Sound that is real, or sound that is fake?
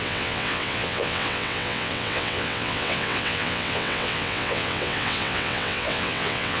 fake